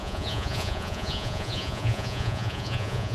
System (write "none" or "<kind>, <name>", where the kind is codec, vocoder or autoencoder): vocoder, Vocos